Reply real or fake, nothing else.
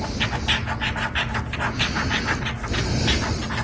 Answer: real